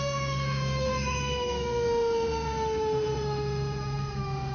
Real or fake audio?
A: fake